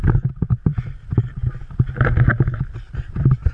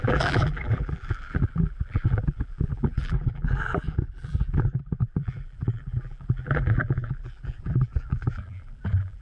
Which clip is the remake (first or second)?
second